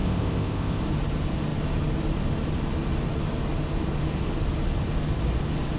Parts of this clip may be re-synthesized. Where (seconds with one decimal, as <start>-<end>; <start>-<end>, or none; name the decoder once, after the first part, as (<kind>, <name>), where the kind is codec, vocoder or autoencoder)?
0.0-0.8 (codec, ZipCodec)